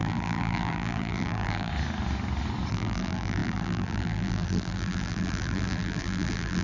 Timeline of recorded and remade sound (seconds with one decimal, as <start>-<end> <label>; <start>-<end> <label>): 0.0-1.7 remade; 1.7-2.7 recorded; 2.7-6.6 remade